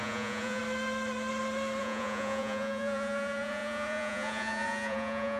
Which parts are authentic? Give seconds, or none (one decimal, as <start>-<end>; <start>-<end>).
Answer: 0.6-1.8